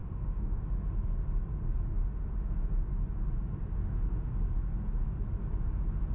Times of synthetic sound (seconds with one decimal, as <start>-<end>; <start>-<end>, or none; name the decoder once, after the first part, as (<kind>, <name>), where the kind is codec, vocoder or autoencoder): 0.0-0.6 (autoencoder, DAC-VAE); 2.0-2.5; 3.7-4.3